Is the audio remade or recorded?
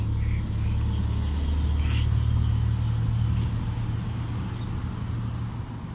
recorded